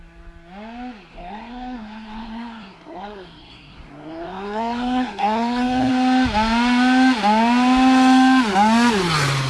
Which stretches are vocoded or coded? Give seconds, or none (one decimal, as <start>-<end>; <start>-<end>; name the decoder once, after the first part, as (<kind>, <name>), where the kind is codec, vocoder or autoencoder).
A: 1.1-5.9 (codec, SNAC)